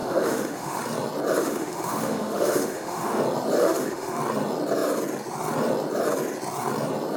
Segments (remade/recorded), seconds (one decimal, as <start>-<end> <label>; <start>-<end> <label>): 0.0-0.8 remade; 0.8-1.4 recorded; 1.4-3.2 remade; 3.2-3.6 recorded; 3.6-4.2 remade; 4.2-7.2 recorded

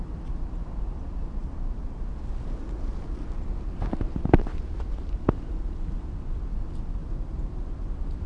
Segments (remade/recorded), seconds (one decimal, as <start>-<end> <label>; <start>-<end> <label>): 0.0-1.4 remade; 1.4-4.4 recorded; 4.4-7.0 remade; 7.0-7.9 recorded; 7.9-8.3 remade